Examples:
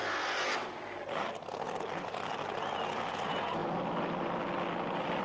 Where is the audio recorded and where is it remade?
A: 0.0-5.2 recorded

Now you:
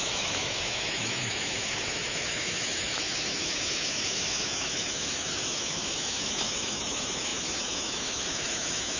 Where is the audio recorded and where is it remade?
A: 0.0-9.0 remade

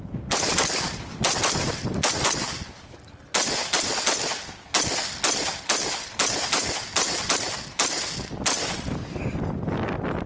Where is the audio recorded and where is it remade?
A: 0.0-10.3 recorded